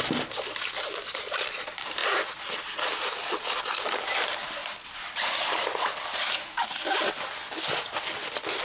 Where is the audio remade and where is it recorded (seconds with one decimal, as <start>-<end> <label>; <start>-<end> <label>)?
0.0-2.0 remade; 2.0-2.8 recorded; 2.8-4.6 remade; 4.6-8.6 recorded